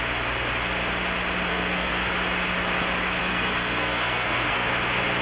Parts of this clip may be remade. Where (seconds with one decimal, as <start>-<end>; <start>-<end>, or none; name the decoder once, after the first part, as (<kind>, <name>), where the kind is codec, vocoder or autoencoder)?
1.5-2.1 (codec, SNAC); 3.2-4.7